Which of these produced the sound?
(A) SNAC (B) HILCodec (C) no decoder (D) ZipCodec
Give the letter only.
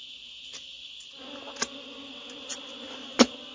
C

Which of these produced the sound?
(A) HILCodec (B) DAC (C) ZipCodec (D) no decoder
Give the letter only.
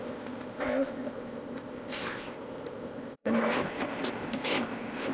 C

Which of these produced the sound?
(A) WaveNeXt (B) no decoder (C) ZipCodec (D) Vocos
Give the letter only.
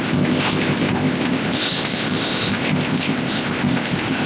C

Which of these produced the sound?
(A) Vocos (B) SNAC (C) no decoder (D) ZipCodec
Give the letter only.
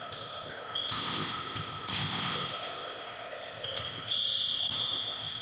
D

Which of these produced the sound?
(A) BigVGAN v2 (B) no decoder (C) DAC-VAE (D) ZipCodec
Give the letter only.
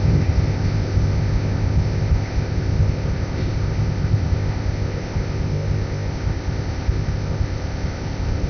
D